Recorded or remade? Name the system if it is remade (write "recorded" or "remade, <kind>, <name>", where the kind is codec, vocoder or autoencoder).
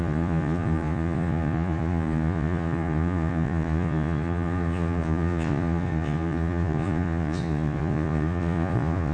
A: remade, vocoder, Vocos